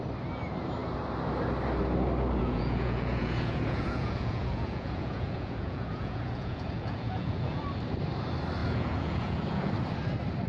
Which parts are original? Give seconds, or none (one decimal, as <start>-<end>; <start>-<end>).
0.0-2.4; 7.6-8.6; 9.7-10.5

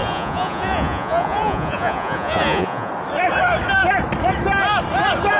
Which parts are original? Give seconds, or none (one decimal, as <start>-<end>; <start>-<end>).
2.9-5.4

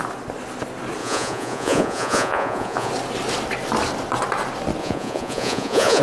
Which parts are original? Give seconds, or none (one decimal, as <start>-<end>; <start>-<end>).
0.0-1.0; 2.9-4.8

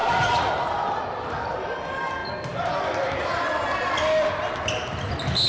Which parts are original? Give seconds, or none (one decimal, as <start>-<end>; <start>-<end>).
0.5-5.5

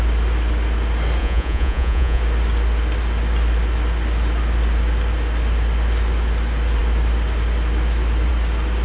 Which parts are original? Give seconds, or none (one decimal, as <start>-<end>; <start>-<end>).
0.0-1.2; 2.2-8.8